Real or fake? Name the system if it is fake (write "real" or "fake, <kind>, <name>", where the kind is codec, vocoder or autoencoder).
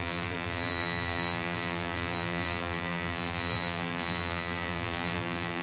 fake, vocoder, BigVGAN v2